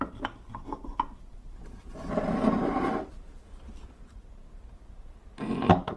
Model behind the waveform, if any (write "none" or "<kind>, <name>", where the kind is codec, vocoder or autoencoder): vocoder, BigVGAN v2